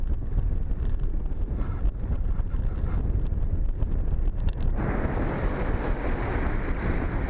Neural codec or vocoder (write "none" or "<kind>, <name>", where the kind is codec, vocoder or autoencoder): none